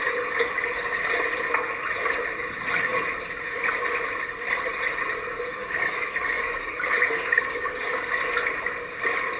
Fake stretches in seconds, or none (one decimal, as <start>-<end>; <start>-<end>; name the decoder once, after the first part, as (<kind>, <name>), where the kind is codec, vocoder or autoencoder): 5.5-8.1 (codec, DAC)